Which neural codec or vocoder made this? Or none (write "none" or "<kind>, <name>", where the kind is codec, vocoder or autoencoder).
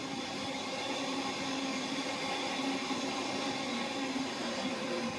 none